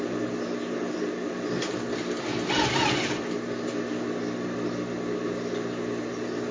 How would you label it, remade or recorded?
recorded